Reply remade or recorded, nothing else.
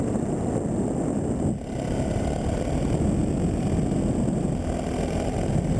recorded